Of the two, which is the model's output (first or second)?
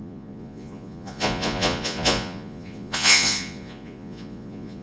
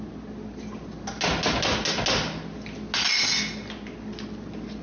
first